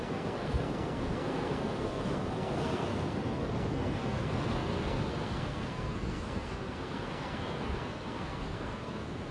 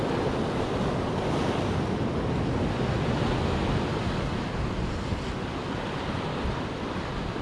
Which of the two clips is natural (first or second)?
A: second